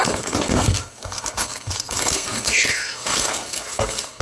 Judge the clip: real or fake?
fake